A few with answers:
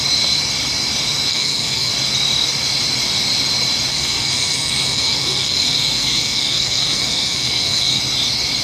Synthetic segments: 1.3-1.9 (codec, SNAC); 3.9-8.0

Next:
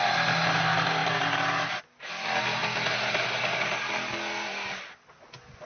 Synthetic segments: none

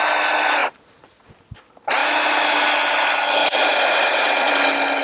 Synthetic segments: 0.6-1.3 (vocoder, Vocos); 3.4-4.5

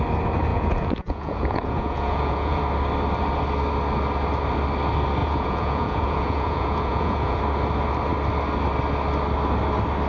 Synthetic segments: 0.5-2.6 (vocoder, Vocos); 5.2-7.4

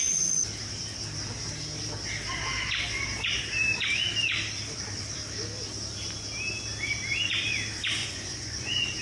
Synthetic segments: 8.0-9.0 (vocoder, Vocos)

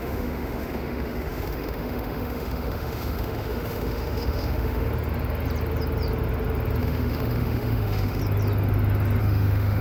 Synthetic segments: 0.0-4.9 (autoencoder, DAC-VAE); 6.8-8.2; 9.2-9.8